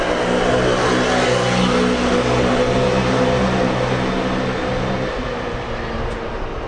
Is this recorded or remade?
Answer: recorded